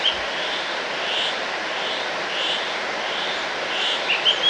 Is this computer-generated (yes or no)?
no